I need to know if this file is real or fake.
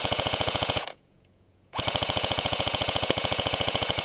fake